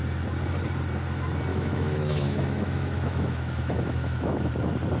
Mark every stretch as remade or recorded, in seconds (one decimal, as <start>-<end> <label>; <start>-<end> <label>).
0.0-1.5 recorded; 1.5-4.5 remade; 4.5-5.0 recorded

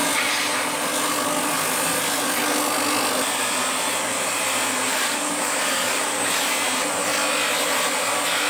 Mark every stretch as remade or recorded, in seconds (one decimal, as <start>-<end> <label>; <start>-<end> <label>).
0.0-4.9 recorded; 4.9-6.4 remade; 6.4-8.5 recorded

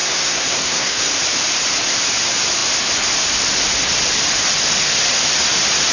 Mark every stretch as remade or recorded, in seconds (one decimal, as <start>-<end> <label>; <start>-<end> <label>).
0.0-1.1 remade; 1.1-5.9 recorded

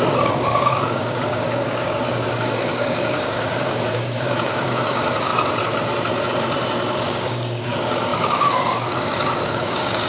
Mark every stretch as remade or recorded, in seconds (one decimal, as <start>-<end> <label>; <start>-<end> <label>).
0.0-5.3 remade; 5.3-7.0 recorded; 7.0-10.1 remade

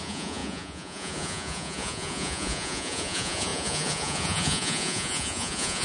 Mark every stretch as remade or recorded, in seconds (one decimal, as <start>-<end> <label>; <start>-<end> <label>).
0.0-5.8 remade

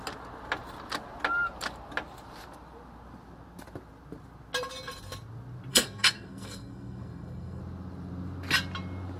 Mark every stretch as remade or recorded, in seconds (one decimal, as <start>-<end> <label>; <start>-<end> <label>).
0.0-5.7 recorded; 5.7-7.6 remade; 7.6-9.2 recorded

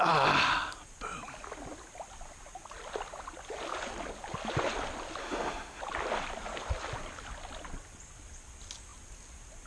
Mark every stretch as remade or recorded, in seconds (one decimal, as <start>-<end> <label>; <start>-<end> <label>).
0.0-5.2 recorded; 5.2-5.8 remade; 5.8-9.7 recorded

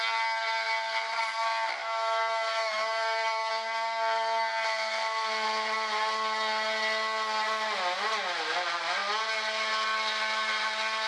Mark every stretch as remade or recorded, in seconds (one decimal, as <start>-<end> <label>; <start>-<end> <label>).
0.0-1.8 recorded; 1.8-3.5 remade; 3.5-11.1 recorded